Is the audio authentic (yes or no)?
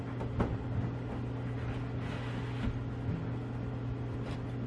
yes